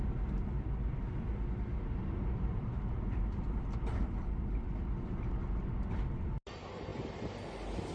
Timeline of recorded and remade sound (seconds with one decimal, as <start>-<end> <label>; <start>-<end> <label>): 0.0-1.7 recorded; 1.7-2.8 remade; 2.8-7.9 recorded